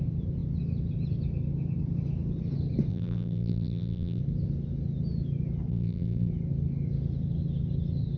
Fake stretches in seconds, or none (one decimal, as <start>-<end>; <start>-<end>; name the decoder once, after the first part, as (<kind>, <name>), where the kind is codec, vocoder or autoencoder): 2.9-4.2 (vocoder, BigVGAN v2); 5.7-6.3